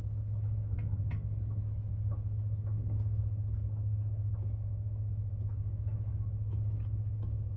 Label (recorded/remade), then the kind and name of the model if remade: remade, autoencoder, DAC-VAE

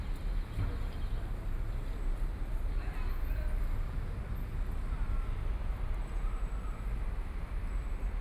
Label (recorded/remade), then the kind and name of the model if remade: recorded